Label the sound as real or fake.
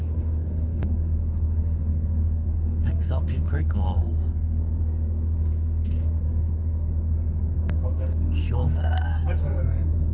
fake